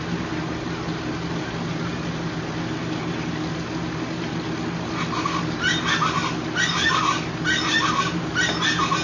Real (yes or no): yes